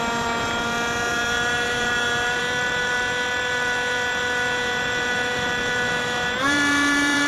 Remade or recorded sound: remade